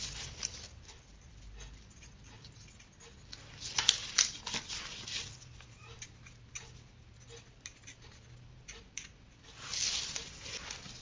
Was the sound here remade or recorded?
recorded